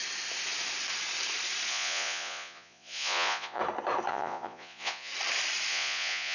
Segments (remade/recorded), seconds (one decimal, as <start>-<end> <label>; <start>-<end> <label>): 0.0-1.7 recorded; 1.7-3.6 remade; 3.6-4.1 recorded; 4.1-5.1 remade; 5.1-5.7 recorded; 5.7-6.3 remade